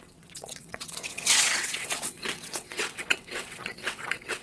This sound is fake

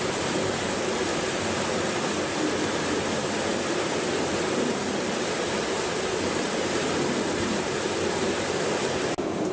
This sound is real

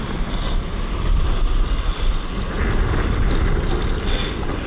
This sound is real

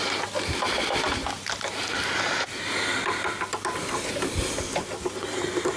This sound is real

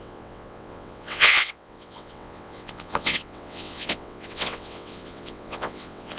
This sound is fake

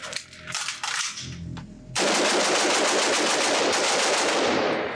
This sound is real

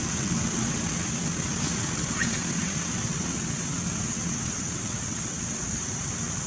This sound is fake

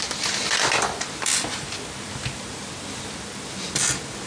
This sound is real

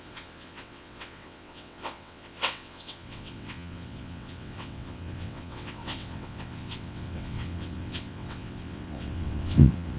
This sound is fake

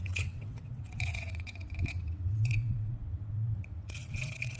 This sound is fake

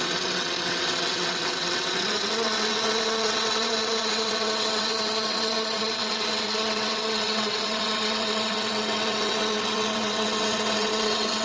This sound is fake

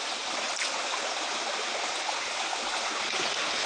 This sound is real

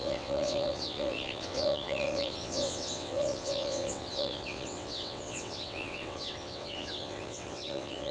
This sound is fake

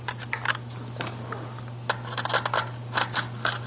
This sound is real